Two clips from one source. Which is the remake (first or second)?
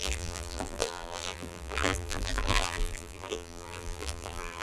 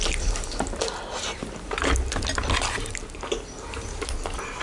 first